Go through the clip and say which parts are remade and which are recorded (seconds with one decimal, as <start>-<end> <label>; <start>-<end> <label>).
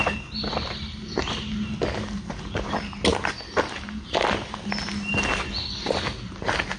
0.0-6.8 recorded